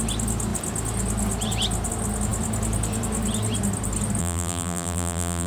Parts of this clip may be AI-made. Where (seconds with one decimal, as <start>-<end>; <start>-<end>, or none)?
4.2-5.5